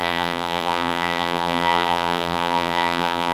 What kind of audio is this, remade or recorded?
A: remade